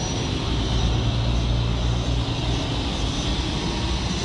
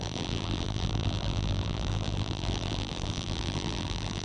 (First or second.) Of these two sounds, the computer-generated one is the second